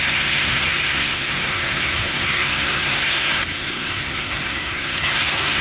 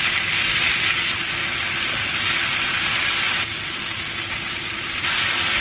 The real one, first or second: second